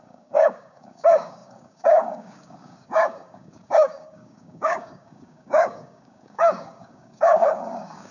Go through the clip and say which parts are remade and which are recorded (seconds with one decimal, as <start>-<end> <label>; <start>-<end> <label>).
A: 0.0-8.1 remade